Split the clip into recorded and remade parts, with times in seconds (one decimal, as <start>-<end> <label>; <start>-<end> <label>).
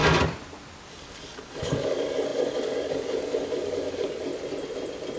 0.0-0.9 recorded; 0.9-4.3 remade; 4.3-5.2 recorded